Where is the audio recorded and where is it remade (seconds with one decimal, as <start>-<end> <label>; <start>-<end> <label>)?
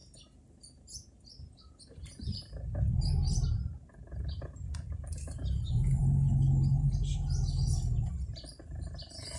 0.0-9.4 recorded